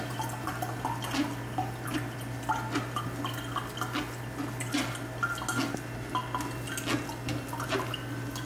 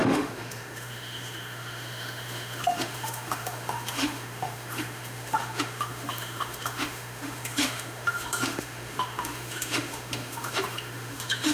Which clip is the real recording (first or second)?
first